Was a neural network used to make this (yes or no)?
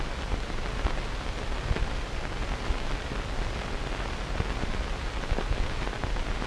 no